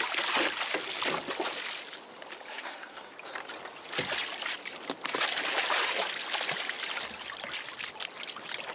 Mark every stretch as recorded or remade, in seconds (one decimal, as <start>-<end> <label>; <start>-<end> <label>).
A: 0.0-2.5 recorded; 2.5-3.1 remade; 3.1-8.7 recorded